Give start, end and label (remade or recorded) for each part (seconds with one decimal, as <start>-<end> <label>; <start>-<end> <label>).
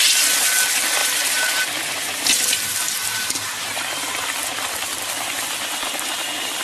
0.0-1.0 recorded; 1.0-4.7 remade; 4.7-6.6 recorded